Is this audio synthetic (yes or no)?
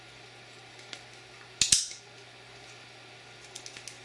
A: no